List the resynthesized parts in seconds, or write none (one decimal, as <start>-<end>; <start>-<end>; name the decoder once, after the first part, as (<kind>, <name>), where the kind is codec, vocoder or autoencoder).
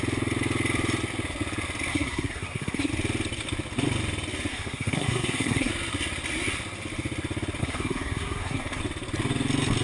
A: 1.9-2.9 (codec, SNAC); 4.5-5.7; 7.6-8.8